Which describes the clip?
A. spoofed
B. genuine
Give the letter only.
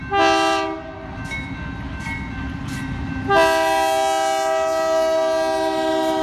B